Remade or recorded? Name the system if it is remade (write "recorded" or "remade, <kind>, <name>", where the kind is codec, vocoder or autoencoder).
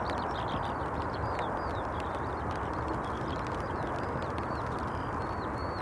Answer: recorded